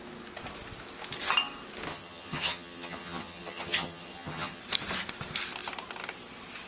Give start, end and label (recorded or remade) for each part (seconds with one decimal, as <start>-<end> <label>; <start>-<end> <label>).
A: 0.0-1.9 recorded; 1.9-4.6 remade; 4.6-6.7 recorded